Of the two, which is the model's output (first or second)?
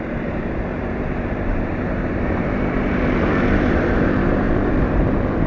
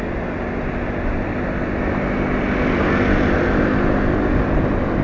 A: first